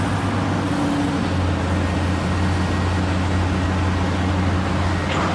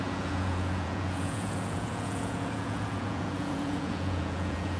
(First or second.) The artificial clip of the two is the second